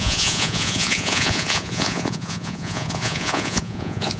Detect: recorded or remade remade